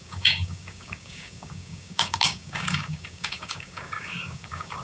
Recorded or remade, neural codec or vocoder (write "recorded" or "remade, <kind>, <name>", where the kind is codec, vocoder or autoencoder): remade, codec, DAC